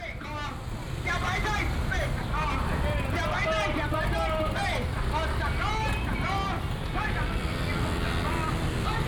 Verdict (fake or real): real